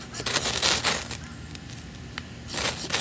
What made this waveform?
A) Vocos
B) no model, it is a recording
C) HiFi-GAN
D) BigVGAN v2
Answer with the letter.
B